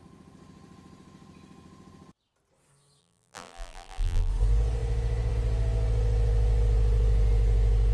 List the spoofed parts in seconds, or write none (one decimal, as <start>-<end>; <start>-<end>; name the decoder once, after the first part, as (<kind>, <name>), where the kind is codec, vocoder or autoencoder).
3.0-4.3 (vocoder, BigVGAN v2)